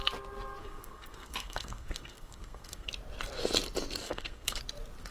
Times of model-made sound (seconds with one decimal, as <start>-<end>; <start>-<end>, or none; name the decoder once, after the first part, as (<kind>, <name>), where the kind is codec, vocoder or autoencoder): 0.6-2.9 (codec, SNAC); 4.0-4.6